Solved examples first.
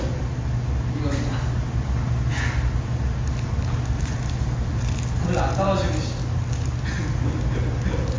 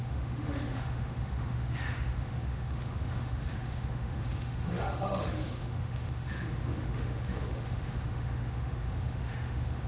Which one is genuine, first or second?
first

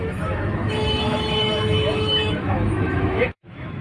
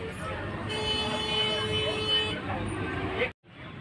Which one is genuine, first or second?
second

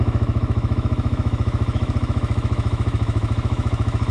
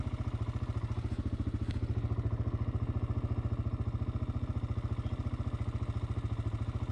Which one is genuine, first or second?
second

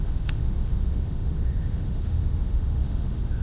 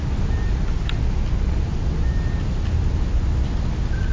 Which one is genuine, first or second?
second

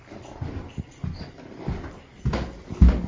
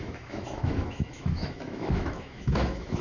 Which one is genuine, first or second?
first